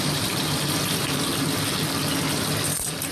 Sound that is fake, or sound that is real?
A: real